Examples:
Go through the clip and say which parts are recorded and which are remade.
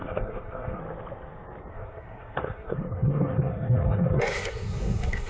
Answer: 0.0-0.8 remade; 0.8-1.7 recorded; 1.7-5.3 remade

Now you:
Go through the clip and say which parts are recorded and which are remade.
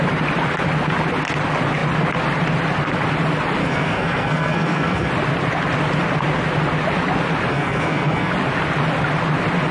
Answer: 0.0-3.6 recorded; 3.6-5.1 remade; 5.1-7.5 recorded; 7.5-8.3 remade; 8.3-9.7 recorded